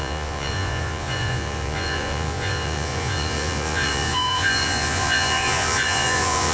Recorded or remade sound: remade